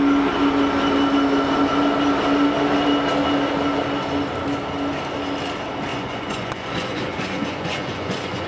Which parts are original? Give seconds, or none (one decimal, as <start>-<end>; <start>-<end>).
0.0-5.9